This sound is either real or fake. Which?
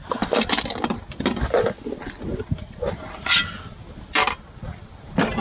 real